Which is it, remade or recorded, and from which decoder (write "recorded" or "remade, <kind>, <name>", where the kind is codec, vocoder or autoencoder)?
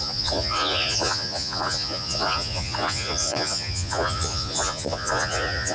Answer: remade, vocoder, Vocos